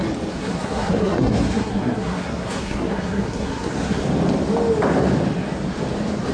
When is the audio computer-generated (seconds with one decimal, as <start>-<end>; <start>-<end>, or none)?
0.4-4.0

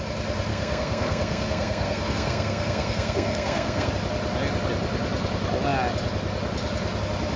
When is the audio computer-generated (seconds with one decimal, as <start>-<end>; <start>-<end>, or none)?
0.5-3.9

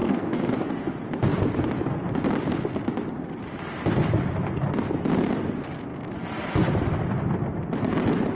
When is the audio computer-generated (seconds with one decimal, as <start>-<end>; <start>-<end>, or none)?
0.0-0.7

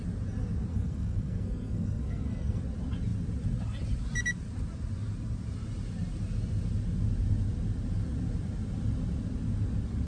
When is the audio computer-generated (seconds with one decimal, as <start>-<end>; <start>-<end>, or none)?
0.7-2.6

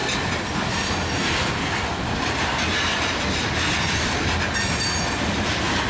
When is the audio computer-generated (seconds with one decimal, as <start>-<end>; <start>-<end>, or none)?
none

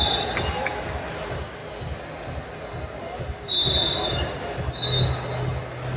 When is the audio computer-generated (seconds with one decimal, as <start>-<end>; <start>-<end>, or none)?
none

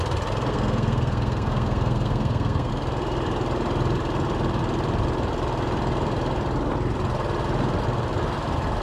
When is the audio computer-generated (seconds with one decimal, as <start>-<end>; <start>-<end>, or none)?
0.5-2.7

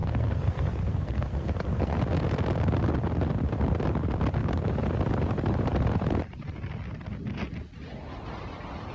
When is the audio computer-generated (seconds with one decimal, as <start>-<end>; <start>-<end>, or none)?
0.0-2.0